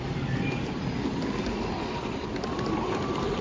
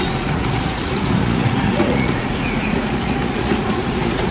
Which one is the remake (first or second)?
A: second